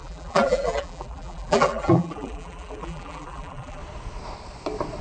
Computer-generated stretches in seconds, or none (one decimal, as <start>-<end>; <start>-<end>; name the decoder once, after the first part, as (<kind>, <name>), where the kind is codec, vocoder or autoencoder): 0.0-3.8 (vocoder, BigVGAN v2)